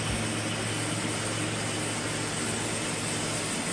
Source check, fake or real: real